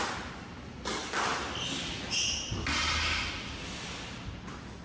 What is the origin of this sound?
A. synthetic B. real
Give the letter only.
B